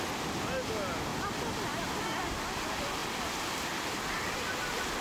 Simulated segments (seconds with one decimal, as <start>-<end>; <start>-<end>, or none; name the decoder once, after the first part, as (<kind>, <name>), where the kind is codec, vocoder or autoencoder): 1.1-2.2 (vocoder, BigVGAN v2); 3.0-3.9

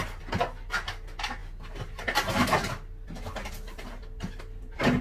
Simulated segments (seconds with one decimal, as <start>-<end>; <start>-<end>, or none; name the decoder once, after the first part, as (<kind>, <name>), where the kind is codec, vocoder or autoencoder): none

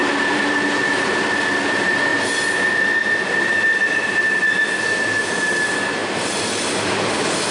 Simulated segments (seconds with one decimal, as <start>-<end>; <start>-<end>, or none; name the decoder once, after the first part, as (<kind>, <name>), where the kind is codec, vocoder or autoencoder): 6.0-6.7 (vocoder, BigVGAN v2)

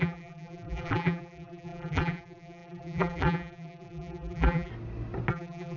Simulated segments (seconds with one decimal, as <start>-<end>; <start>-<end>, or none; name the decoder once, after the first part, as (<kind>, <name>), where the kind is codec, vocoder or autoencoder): 0.0-4.7 (vocoder, BigVGAN v2); 5.3-5.8

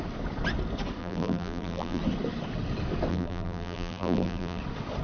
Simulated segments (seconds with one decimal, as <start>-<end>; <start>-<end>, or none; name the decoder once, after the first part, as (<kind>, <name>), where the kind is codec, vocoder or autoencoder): 1.0-2.0 (vocoder, BigVGAN v2); 3.1-4.6